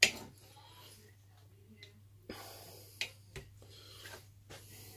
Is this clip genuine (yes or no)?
yes